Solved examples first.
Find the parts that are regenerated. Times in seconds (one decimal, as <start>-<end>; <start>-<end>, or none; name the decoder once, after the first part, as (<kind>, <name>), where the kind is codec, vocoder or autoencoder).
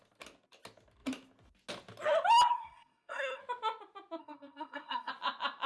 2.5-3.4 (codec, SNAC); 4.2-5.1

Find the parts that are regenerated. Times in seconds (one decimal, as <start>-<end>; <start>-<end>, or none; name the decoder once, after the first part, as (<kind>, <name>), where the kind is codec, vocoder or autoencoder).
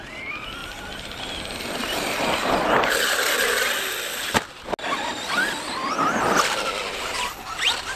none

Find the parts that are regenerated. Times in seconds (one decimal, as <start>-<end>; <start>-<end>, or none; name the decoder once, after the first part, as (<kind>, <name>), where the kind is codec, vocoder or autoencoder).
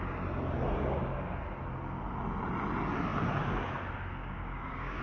4.2-5.0 (codec, DAC)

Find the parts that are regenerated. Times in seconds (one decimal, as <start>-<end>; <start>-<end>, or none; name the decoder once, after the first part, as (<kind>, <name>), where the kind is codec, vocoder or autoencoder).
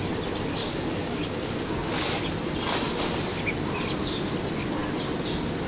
0.6-1.7 (codec, DAC)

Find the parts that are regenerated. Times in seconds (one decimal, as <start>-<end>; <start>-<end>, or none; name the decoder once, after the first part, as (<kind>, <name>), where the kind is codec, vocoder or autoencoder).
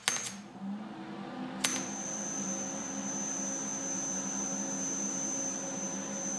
1.7-3.0 (vocoder, BigVGAN v2)